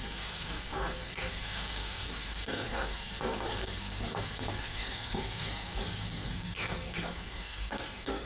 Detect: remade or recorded remade